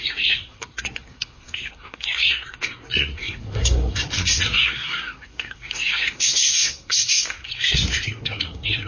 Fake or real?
fake